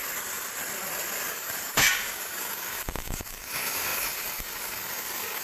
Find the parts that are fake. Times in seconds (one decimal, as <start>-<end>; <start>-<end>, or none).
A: 1.3-5.4